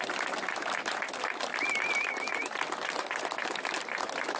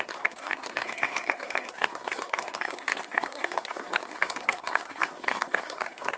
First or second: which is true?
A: first